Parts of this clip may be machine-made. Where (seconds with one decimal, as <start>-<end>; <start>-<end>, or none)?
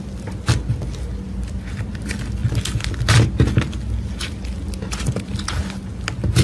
none